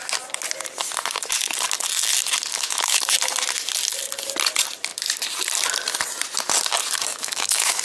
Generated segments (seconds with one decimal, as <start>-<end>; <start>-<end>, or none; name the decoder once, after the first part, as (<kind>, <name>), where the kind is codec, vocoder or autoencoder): 2.5-3.0 (autoencoder, DAC-VAE); 7.1-7.8